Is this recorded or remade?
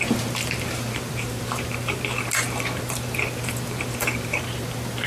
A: remade